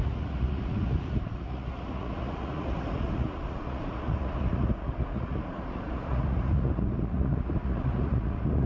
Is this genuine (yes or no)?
no